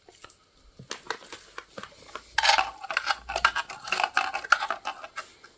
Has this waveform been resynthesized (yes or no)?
no